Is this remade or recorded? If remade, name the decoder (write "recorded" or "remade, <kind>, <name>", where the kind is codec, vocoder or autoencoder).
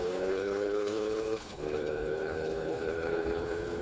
remade, codec, HILCodec